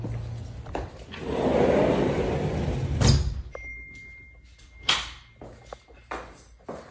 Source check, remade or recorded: recorded